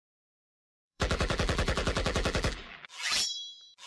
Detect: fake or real fake